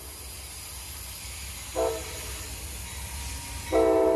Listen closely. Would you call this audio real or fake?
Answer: real